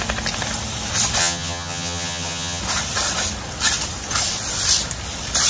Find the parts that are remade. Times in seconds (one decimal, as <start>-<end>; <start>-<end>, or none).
1.2-2.6